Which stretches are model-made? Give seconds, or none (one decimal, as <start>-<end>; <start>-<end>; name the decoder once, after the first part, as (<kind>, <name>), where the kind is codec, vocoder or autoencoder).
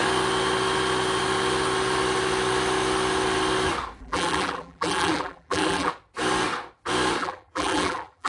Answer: 4.0-5.9 (vocoder, BigVGAN v2); 7.2-8.3